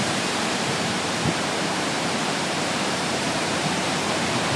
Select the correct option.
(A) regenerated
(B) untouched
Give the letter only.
A